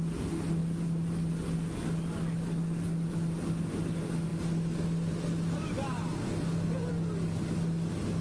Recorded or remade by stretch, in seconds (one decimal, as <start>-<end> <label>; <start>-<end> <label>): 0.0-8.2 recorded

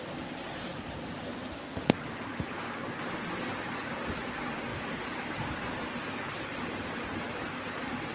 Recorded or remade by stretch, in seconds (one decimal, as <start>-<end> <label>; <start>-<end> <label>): 0.0-0.7 recorded; 0.7-1.7 remade; 1.7-8.1 recorded

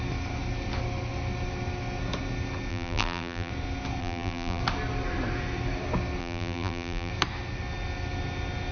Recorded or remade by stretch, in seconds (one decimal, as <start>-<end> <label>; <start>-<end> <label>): 0.0-2.7 recorded; 2.7-3.5 remade; 3.5-4.0 recorded; 4.0-4.6 remade; 4.6-6.2 recorded; 6.2-7.1 remade; 7.1-8.7 recorded

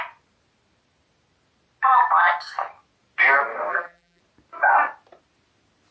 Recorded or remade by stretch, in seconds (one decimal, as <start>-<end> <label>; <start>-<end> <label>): 0.0-3.7 recorded; 3.7-4.2 remade; 4.2-5.9 recorded